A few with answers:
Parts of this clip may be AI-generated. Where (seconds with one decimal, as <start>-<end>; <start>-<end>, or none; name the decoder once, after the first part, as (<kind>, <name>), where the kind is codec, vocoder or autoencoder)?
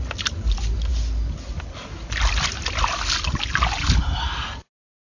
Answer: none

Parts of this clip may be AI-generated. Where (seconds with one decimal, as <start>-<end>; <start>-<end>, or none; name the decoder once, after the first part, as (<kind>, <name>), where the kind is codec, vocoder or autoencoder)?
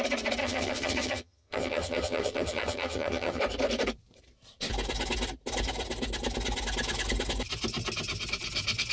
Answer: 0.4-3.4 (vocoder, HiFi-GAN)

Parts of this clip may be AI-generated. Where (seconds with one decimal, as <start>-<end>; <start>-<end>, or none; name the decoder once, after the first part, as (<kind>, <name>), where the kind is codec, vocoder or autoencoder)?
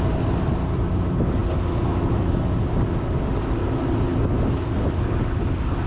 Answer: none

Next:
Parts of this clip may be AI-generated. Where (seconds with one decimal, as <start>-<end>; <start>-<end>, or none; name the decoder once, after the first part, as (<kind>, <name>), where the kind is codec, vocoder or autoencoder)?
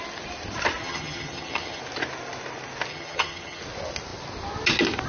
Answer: 0.8-1.8 (vocoder, HiFi-GAN); 2.9-3.6